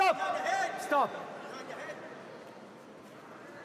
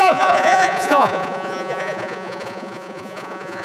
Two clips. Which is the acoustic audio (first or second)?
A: first